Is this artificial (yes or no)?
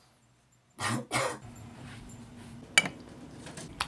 no